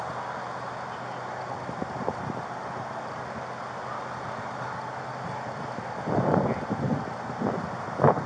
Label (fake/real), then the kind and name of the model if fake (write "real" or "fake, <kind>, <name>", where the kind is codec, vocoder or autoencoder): real